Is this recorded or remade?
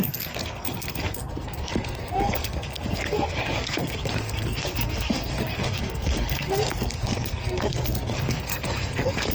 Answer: remade